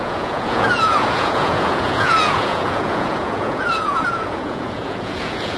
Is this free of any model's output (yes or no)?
no